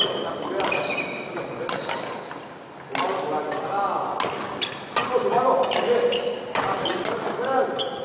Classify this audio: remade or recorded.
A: recorded